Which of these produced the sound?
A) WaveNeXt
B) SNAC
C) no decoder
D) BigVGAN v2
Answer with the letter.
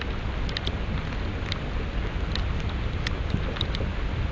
C